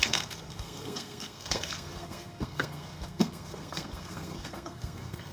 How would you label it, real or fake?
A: fake